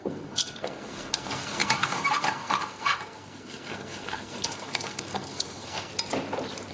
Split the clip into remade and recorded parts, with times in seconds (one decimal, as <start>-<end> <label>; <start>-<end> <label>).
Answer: 0.0-5.9 remade; 5.9-6.7 recorded